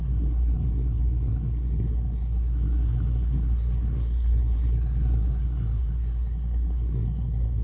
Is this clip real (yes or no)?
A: no